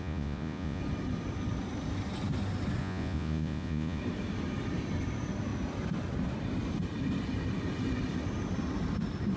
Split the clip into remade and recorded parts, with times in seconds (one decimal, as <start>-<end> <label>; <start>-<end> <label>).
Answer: 0.0-0.8 remade; 0.8-2.8 recorded; 2.8-4.0 remade; 4.0-9.4 recorded